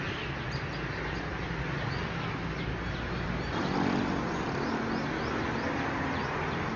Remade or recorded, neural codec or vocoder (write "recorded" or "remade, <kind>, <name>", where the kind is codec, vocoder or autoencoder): recorded